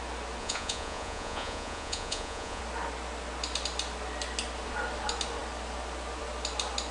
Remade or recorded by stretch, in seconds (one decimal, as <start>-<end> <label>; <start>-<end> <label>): 0.0-0.4 recorded; 0.4-2.6 remade; 2.6-6.9 recorded